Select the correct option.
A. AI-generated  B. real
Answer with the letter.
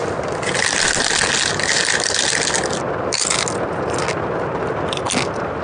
B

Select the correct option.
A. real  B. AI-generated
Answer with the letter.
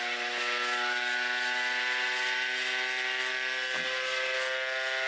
A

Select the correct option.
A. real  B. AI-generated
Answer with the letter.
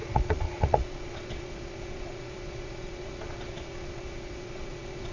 B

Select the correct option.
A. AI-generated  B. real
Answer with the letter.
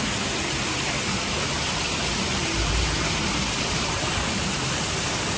B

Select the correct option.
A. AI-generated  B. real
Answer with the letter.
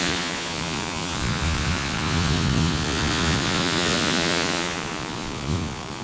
A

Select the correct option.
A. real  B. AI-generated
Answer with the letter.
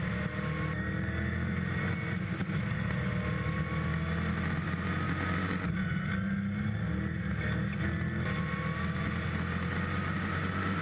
A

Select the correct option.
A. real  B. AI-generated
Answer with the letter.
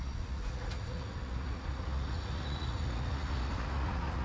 B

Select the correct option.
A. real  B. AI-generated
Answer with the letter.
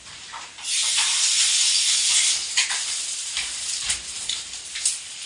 A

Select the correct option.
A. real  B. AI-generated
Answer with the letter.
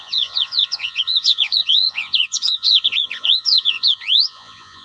B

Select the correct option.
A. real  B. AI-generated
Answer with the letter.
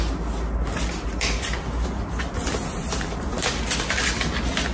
A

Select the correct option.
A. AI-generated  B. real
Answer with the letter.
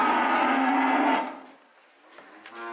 B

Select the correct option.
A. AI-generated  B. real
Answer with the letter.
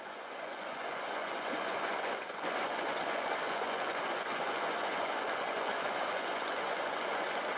A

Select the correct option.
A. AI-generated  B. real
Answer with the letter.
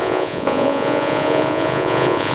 A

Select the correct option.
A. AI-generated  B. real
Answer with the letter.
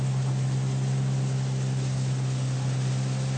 B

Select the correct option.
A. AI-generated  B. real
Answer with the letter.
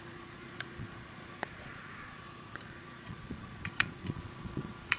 A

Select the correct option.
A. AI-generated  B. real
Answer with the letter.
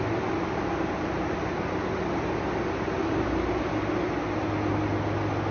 B